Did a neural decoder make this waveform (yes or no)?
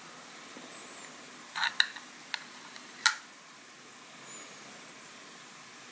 no